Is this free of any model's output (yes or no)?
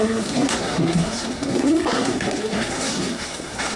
no